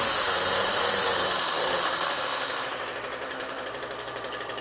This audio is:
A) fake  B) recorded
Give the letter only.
A